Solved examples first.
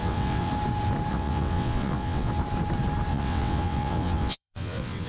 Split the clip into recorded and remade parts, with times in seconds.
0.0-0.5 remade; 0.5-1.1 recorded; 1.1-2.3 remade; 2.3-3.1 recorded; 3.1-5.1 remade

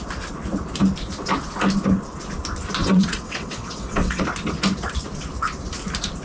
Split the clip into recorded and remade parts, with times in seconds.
0.0-2.8 recorded; 2.8-4.2 remade; 4.2-6.2 recorded

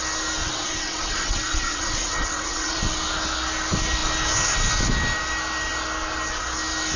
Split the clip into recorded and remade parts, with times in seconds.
0.0-0.4 recorded; 0.4-2.8 remade; 2.8-7.0 recorded

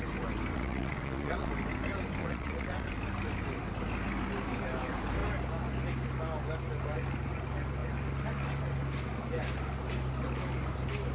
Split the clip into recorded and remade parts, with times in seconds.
0.0-0.5 recorded; 0.5-1.5 remade; 1.5-2.2 recorded; 2.2-2.9 remade; 2.9-11.1 recorded

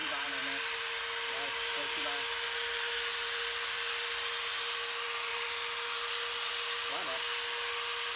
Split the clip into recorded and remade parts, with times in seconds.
0.0-8.2 recorded